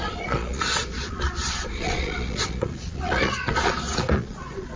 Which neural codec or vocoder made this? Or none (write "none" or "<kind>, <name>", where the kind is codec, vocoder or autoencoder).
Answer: vocoder, Vocos